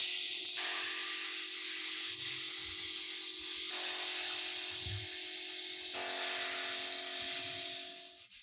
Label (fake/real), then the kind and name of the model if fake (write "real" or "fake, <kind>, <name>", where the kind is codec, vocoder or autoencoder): real